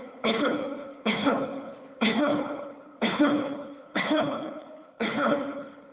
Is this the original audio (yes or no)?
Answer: no